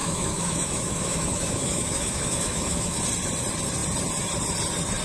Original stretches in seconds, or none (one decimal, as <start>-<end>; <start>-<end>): 3.0-5.0